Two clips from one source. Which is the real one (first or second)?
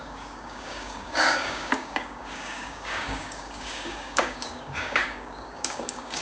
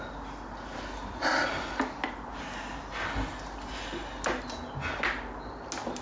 second